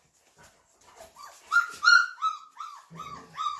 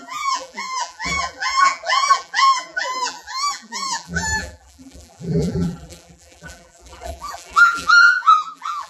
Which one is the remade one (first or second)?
second